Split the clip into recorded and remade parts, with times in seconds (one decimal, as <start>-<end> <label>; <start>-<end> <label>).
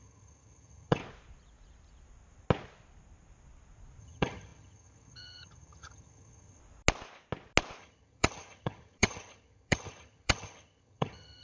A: 0.0-1.0 remade; 1.0-4.0 recorded; 4.0-6.6 remade; 6.6-7.8 recorded; 7.8-11.4 remade